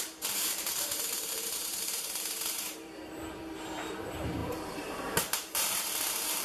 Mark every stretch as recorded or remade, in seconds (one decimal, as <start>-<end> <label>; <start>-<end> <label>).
0.0-6.4 remade